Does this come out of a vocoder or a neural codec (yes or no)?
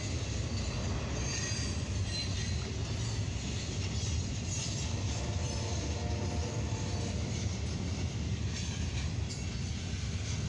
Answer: no